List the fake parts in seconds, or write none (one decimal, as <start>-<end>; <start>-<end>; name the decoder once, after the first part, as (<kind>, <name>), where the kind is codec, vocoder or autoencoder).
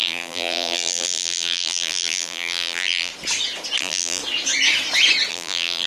0.0-3.1 (vocoder, BigVGAN v2); 3.8-4.2; 5.3-5.9